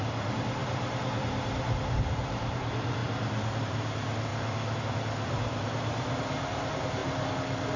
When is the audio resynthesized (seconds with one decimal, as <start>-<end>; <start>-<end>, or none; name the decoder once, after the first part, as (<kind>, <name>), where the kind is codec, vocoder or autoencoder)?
0.0-3.0 (vocoder, BigVGAN v2); 3.6-4.3; 4.8-7.0